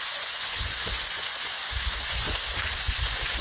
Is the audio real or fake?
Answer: fake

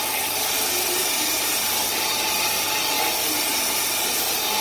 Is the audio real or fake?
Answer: real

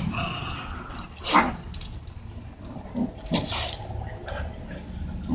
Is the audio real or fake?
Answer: real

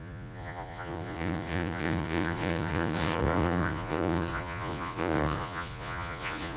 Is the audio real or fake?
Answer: fake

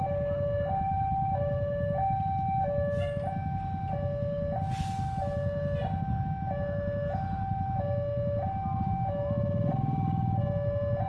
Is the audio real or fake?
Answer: real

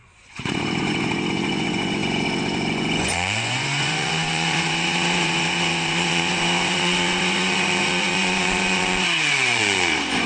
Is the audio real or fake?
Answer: fake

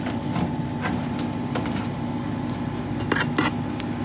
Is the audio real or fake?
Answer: real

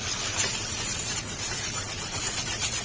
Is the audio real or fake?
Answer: fake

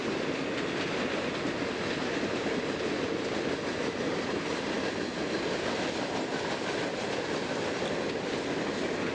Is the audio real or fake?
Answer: real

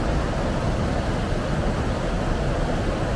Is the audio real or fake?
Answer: real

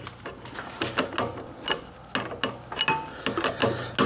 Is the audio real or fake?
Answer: real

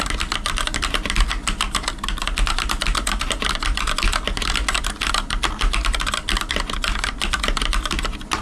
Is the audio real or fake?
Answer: real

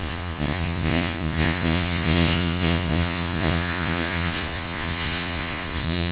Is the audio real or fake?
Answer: fake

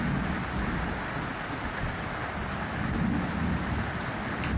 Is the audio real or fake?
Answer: real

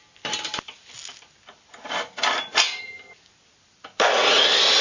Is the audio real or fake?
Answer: real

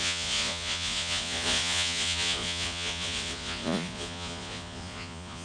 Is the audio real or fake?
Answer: fake